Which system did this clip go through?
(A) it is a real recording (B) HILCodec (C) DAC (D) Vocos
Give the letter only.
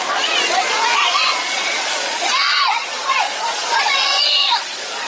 D